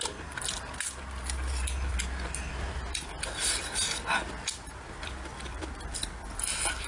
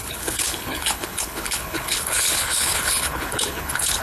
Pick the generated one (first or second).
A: second